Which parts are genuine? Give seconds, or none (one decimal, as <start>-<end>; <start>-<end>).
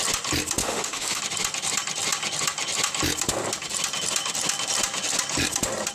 0.0-0.6; 1.2-5.9